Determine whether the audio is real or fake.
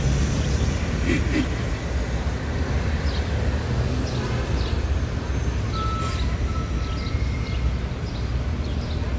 real